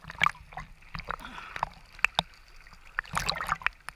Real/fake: real